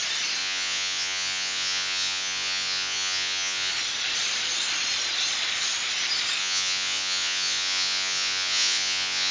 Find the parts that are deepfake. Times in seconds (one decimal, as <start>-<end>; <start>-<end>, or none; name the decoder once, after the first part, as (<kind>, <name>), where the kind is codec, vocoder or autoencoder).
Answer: 0.4-3.7 (vocoder, Vocos); 6.4-9.3